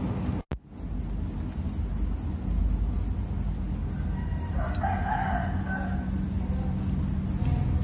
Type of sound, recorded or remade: recorded